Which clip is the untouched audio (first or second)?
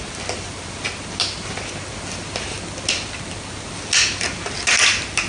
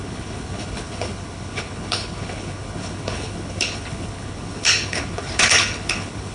first